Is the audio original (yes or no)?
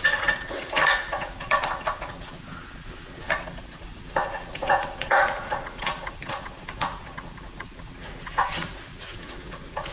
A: no